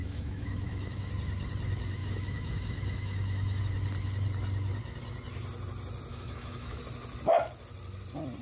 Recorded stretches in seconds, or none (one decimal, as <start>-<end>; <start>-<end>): 1.1-2.0; 3.6-6.1; 6.8-8.4